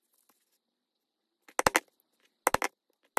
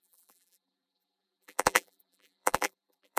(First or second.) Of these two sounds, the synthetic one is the second